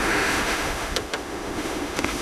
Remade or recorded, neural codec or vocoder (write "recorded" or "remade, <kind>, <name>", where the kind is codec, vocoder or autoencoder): remade, autoencoder, DAC-VAE